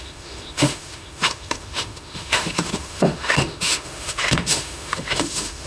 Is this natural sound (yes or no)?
no